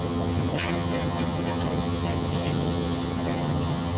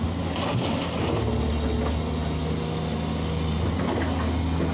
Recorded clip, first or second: second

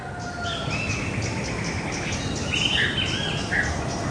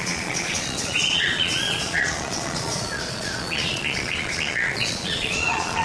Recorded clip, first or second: first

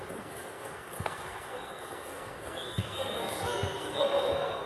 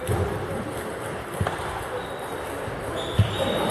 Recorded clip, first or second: second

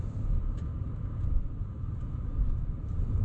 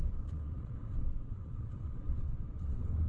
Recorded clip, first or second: first